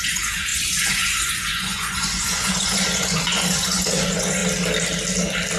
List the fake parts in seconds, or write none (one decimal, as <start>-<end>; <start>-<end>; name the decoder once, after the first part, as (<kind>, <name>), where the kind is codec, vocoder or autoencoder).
0.0-4.4 (vocoder, Vocos)